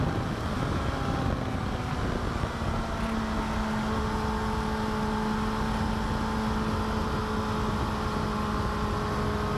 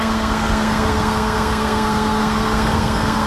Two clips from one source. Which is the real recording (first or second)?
first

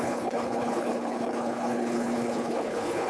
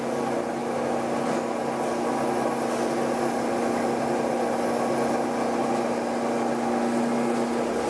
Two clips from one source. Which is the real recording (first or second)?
second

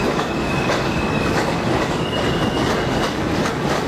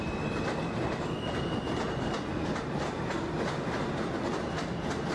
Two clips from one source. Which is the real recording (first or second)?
second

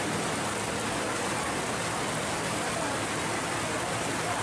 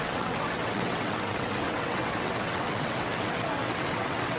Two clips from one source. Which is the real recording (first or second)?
first